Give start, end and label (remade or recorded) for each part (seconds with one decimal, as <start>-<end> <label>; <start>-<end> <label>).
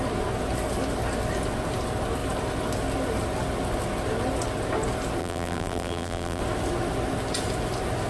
0.0-5.2 recorded; 5.2-6.4 remade; 6.4-8.1 recorded